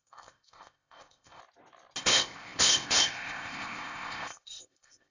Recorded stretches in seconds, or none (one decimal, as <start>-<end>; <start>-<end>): 1.4-2.0